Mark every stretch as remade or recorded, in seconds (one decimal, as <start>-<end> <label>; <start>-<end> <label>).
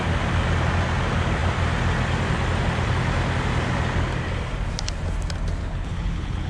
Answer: 0.0-5.6 recorded; 5.6-6.5 remade